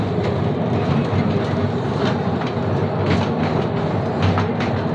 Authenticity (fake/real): real